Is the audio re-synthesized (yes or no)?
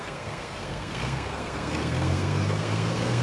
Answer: yes